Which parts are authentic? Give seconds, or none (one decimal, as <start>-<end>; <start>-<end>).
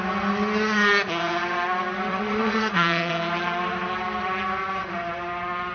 0.0-2.1; 3.1-5.7